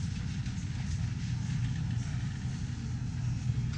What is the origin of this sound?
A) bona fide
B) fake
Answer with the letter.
A